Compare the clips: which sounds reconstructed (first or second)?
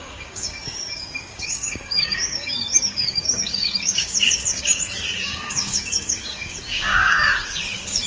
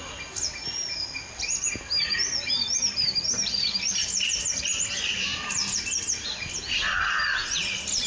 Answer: first